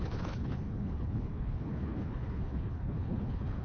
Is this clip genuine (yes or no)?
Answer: no